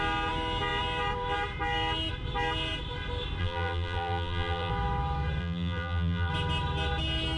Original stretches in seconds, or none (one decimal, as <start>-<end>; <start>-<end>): 0.0-3.4; 4.7-5.4; 6.3-7.4